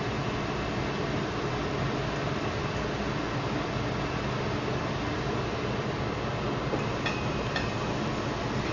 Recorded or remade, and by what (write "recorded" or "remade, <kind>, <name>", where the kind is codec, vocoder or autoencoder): recorded